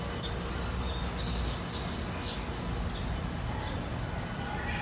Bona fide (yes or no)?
yes